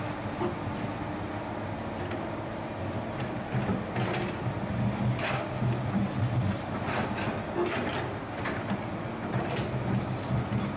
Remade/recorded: recorded